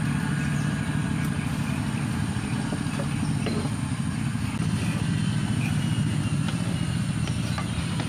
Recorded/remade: recorded